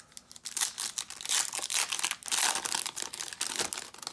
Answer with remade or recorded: recorded